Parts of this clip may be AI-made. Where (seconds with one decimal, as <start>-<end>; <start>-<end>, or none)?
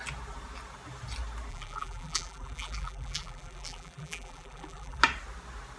1.5-5.0